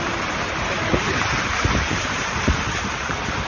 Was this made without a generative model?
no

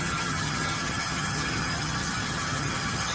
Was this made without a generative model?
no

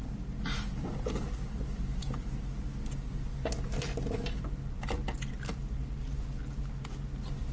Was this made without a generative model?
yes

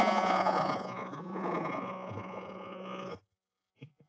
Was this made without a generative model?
no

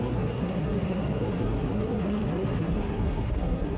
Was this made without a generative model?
no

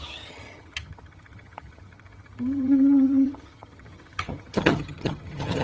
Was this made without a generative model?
no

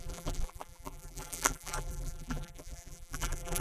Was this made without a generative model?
no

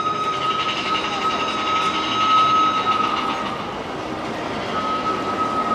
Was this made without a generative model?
yes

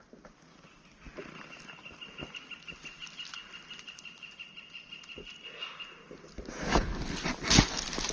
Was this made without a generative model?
yes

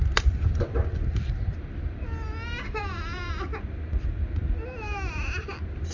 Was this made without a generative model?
yes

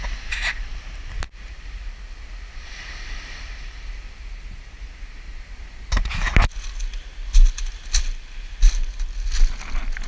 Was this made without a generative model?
yes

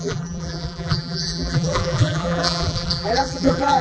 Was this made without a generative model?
no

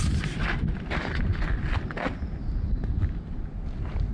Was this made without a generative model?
yes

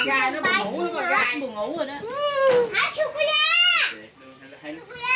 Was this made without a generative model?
yes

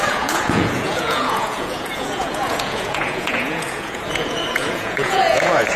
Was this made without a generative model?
no